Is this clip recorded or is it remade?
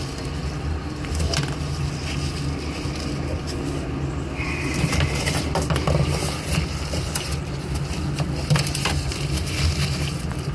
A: remade